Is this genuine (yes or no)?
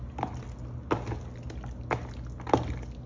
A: yes